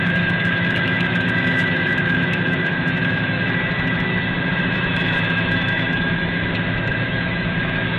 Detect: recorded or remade remade